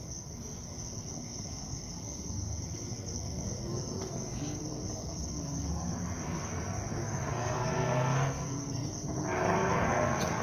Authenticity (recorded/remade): remade